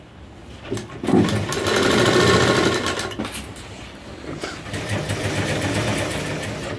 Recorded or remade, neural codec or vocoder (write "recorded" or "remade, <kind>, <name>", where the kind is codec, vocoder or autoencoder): recorded